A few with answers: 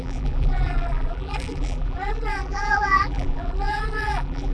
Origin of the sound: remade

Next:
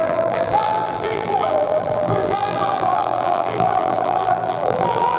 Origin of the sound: remade